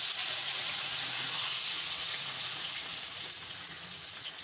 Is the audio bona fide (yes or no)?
no